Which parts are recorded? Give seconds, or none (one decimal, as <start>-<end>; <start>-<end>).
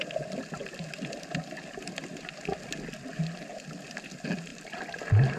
0.0-5.4